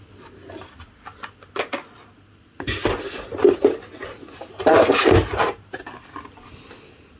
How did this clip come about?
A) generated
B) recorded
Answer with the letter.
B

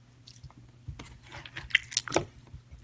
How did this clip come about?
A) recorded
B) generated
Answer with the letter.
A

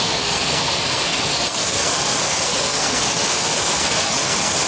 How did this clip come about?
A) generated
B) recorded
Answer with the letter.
A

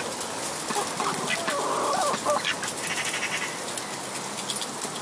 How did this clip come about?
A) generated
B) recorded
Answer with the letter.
B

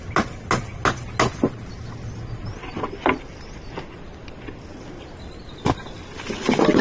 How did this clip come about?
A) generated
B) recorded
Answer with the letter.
B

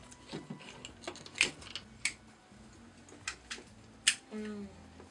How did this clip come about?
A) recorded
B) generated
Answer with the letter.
A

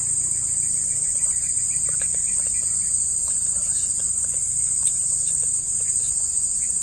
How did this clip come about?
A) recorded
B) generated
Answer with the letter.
B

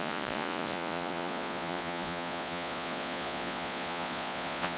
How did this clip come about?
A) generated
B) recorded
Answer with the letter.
A